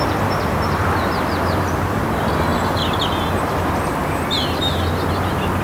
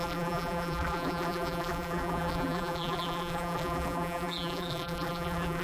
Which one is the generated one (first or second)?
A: second